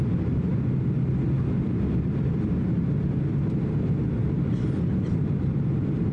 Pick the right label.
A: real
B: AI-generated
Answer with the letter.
A